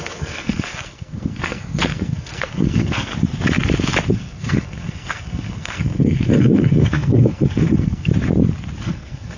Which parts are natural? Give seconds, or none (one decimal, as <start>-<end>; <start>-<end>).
3.1-4.1; 8.1-8.8